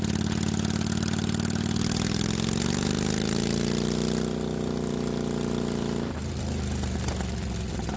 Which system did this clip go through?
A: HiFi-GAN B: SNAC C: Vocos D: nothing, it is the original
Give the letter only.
D